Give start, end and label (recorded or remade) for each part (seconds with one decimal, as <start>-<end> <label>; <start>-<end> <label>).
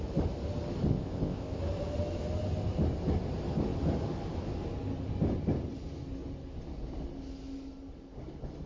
0.0-0.9 recorded; 0.9-1.6 remade; 1.6-8.7 recorded